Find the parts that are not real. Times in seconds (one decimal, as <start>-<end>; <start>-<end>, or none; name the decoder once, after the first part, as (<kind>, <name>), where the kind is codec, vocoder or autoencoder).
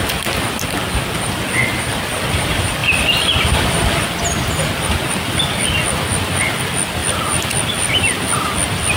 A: none